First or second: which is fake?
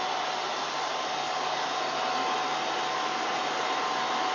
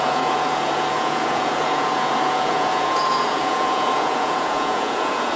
second